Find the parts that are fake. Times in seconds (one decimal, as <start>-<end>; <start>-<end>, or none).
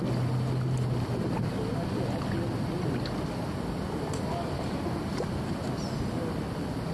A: none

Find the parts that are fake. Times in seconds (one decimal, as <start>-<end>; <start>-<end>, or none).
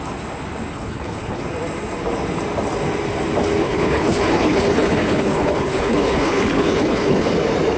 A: 0.7-1.4; 3.6-7.3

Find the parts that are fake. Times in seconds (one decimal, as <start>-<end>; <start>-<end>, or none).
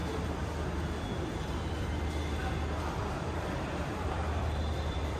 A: 3.1-5.2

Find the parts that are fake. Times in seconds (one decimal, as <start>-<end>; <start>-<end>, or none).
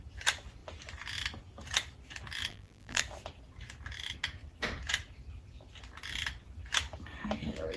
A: 2.5-3.0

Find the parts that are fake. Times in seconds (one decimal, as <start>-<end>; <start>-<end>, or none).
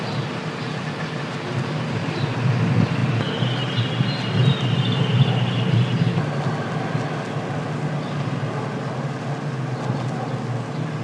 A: none